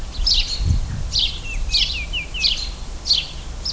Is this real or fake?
real